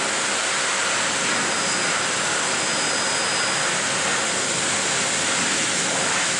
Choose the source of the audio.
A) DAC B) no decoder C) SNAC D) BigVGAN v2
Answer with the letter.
B